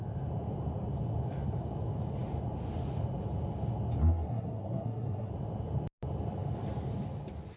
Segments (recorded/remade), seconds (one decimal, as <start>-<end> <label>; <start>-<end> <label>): 0.0-4.0 recorded; 4.0-5.3 remade; 5.3-7.6 recorded